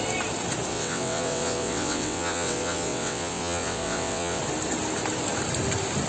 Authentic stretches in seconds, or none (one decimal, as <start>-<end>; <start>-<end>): 0.0-0.7; 4.4-6.1